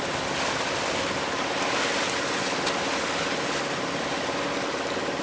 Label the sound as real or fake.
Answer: real